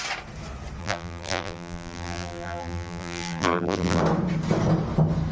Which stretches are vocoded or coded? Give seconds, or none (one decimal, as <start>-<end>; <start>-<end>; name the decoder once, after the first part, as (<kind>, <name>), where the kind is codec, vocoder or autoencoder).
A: 0.8-4.0 (vocoder, BigVGAN v2)